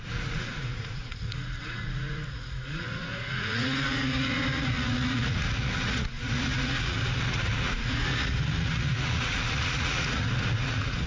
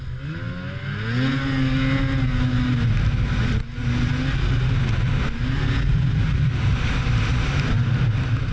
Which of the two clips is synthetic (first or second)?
first